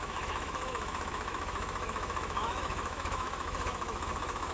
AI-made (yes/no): yes